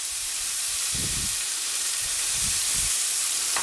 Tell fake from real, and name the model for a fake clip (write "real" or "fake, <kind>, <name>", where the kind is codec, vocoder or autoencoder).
fake, vocoder, BigVGAN v2